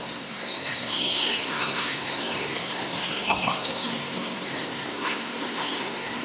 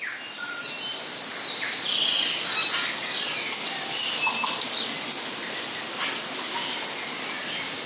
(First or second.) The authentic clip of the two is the second